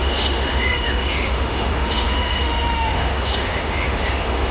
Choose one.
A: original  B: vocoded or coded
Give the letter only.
B